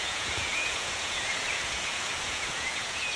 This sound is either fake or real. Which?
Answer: fake